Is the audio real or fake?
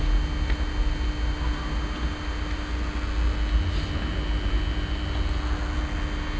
real